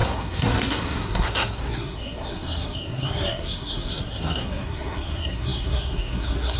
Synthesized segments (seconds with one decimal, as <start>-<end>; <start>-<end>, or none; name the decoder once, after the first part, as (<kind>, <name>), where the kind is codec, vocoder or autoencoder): 0.0-6.6 (codec, SNAC)